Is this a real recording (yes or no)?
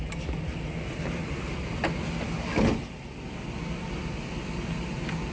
yes